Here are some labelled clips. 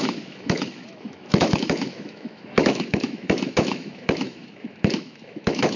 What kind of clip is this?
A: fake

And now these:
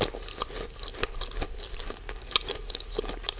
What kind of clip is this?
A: real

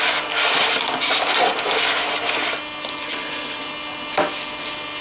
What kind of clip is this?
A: real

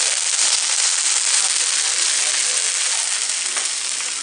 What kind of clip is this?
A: real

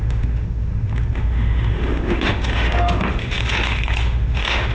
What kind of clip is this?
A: fake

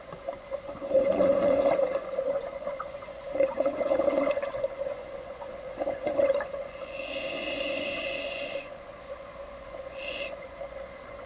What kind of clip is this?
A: fake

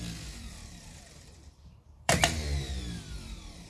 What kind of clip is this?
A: fake